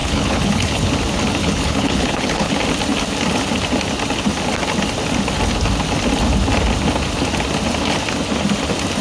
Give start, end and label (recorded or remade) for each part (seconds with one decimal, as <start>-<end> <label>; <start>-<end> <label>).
0.0-0.9 remade; 0.9-1.4 recorded; 1.4-2.5 remade; 2.5-9.0 recorded